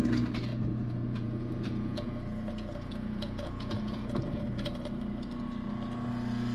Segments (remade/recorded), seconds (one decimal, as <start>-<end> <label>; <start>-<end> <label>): 0.0-0.5 recorded; 0.5-4.4 remade; 4.4-6.5 recorded